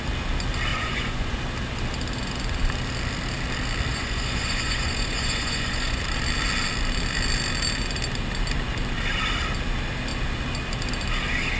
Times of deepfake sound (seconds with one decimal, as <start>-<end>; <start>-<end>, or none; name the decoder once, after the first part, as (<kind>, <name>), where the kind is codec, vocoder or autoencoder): 0.7-1.4 (vocoder, Vocos); 3.9-6.0